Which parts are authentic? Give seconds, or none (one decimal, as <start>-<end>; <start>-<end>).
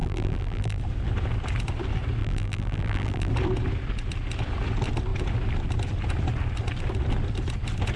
0.8-2.2; 3.3-8.0